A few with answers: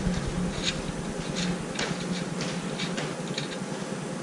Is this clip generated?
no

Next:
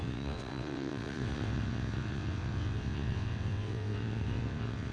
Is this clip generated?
yes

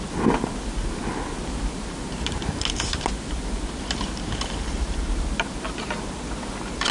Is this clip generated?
no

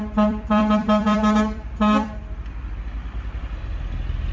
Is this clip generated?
yes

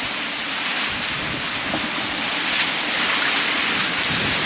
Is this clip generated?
no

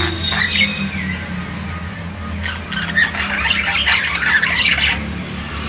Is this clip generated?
no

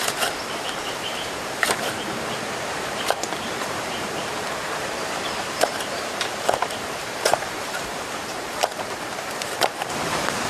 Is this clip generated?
yes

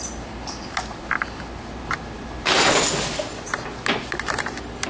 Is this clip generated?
no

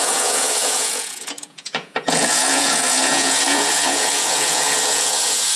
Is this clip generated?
yes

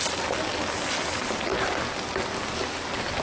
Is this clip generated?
no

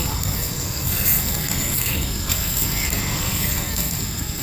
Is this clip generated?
yes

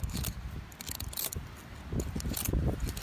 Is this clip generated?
no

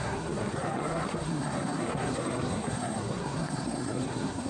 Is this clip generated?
yes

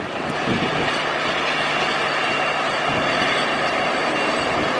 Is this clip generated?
no